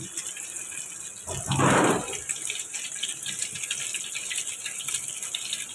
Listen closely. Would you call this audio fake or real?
real